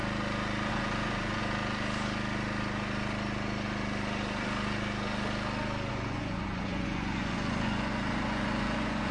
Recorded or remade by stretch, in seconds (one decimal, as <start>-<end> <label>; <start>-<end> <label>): 0.0-0.7 recorded; 0.7-1.4 remade; 1.4-5.9 recorded; 5.9-9.1 remade